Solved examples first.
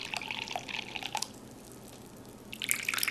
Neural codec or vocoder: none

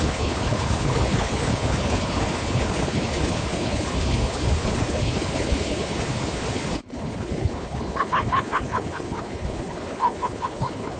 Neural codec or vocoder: codec, HILCodec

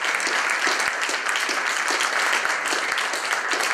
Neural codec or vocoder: none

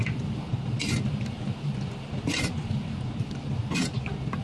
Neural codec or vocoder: none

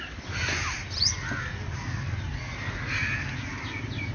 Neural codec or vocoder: none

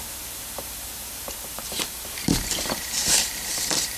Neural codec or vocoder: vocoder, BigVGAN v2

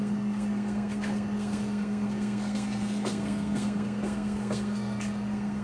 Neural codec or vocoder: codec, SNAC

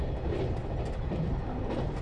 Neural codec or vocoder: none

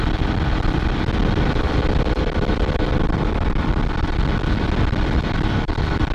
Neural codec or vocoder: vocoder, BigVGAN v2